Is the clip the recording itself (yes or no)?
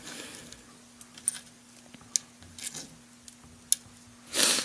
yes